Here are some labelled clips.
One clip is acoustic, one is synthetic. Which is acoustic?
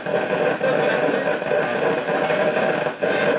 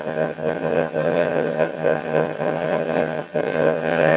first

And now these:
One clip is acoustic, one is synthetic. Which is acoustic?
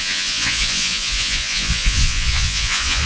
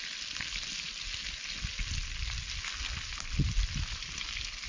second